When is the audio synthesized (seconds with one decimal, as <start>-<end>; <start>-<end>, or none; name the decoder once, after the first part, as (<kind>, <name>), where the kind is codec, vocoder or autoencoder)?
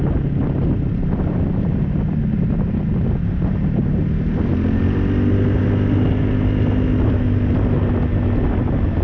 none